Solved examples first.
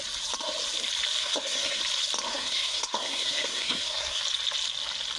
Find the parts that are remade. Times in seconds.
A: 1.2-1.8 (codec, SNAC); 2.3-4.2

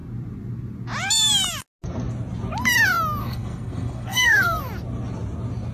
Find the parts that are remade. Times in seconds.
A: 3.2-4.6 (codec, SNAC)

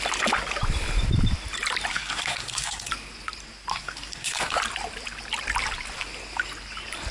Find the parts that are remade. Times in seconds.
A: 1.9-2.9 (codec, SNAC); 3.7-4.6